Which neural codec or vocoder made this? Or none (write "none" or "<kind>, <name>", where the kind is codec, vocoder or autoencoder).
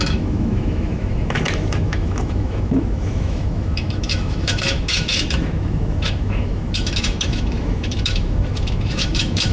autoencoder, DAC-VAE